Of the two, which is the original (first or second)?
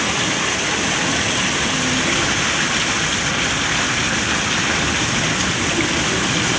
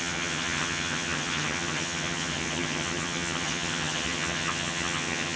first